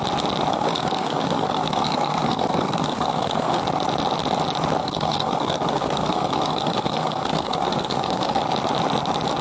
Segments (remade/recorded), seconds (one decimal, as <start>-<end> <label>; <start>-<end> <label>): 0.0-0.5 recorded; 0.5-3.6 remade; 3.6-4.8 recorded; 4.8-8.4 remade; 8.4-9.4 recorded